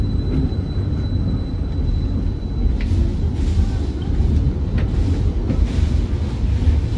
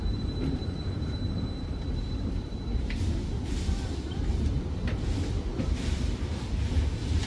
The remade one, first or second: second